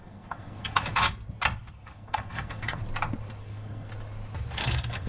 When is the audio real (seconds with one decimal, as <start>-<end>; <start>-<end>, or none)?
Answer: 0.9-1.7; 2.8-3.4; 3.9-4.6